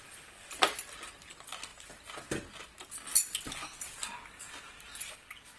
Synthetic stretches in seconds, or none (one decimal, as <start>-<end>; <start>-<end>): none

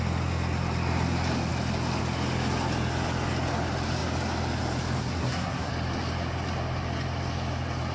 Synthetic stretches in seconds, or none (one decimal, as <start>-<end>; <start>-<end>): 5.0-5.7

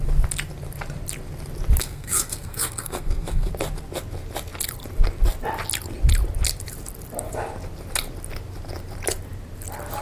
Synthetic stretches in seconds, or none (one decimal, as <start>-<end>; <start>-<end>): 1.8-3.5

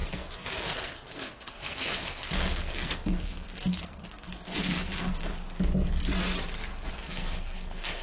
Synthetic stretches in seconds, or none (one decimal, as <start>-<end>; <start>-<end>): 0.0-5.3; 6.9-8.0